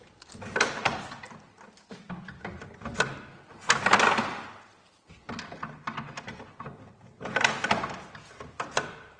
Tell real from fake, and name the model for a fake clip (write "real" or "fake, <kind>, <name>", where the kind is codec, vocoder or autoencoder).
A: real